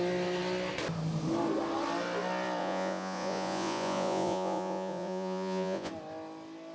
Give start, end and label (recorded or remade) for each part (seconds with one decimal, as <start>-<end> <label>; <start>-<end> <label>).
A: 0.0-2.6 recorded; 2.6-5.9 remade; 5.9-6.7 recorded